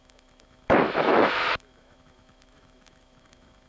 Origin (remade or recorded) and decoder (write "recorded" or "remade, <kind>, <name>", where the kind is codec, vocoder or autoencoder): remade, autoencoder, DAC-VAE